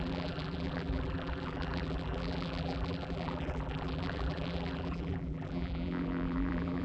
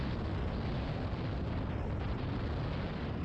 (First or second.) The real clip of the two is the second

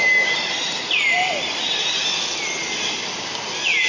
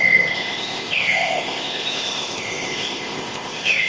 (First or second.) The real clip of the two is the first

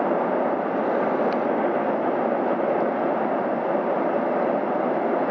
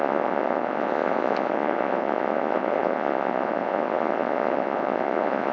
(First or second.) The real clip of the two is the first